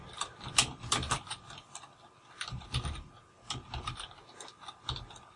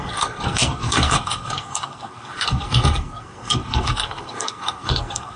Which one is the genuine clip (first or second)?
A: first